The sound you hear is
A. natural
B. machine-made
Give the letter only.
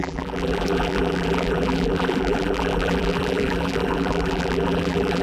B